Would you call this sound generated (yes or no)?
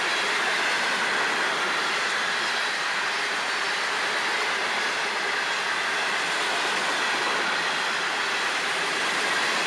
no